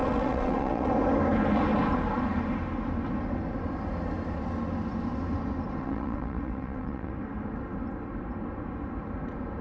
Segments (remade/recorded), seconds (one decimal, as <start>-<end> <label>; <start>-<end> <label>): 0.0-0.9 remade; 0.9-5.8 recorded; 5.8-7.1 remade; 7.1-9.6 recorded